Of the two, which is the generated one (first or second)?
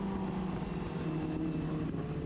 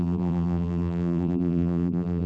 second